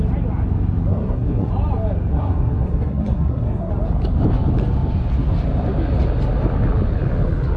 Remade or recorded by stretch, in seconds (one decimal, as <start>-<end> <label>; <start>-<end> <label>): 0.0-0.9 recorded; 0.9-1.5 remade; 1.5-2.1 recorded; 2.1-3.7 remade; 3.7-7.6 recorded